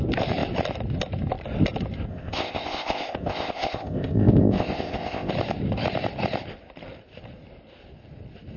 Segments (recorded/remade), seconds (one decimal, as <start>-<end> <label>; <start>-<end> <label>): 0.0-2.1 recorded; 2.1-5.3 remade; 5.3-8.6 recorded